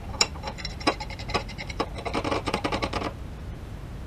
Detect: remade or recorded remade